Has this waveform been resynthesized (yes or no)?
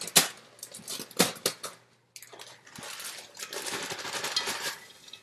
no